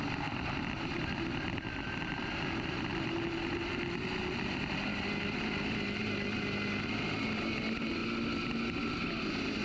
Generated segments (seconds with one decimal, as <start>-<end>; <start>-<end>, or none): none